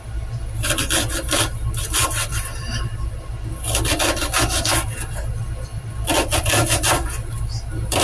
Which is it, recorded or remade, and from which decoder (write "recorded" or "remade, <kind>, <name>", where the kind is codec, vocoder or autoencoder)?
recorded